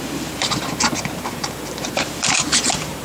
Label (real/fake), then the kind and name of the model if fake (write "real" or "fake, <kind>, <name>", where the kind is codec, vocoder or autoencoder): fake, vocoder, BigVGAN v2